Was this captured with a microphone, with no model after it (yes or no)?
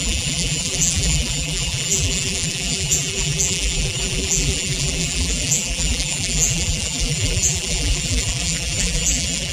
no